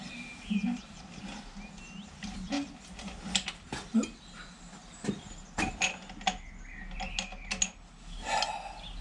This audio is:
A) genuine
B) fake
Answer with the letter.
A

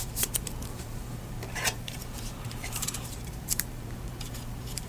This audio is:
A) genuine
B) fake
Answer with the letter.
B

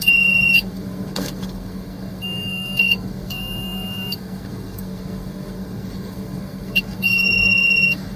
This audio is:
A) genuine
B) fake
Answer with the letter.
B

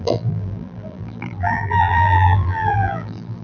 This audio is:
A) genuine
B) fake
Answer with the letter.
B